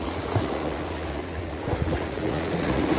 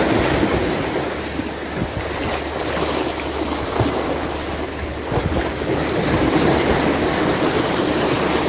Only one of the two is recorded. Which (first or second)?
second